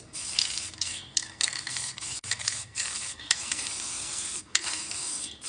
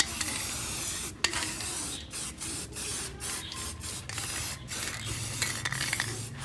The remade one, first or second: first